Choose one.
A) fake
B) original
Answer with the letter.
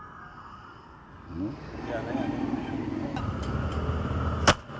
B